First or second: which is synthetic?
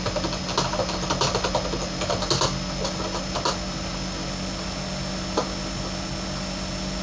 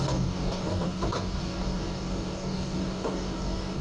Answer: second